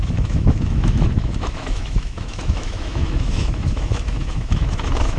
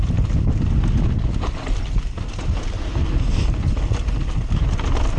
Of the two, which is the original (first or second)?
second